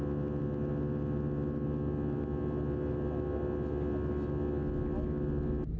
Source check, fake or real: real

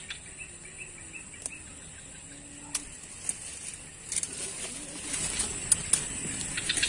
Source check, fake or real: real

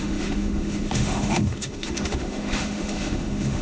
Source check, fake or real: fake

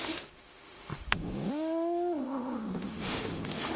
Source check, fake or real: fake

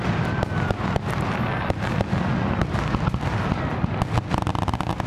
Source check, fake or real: real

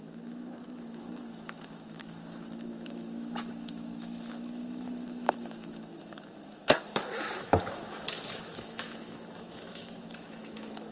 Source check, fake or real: fake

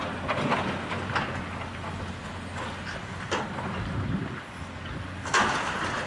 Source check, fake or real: real